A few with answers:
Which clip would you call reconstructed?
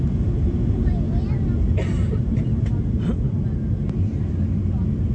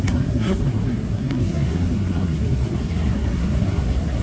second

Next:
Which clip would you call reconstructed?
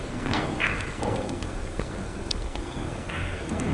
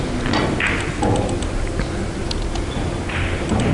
first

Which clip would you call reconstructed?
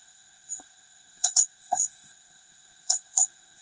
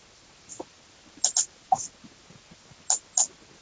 first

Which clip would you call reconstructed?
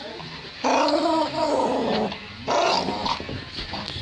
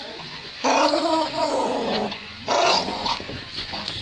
second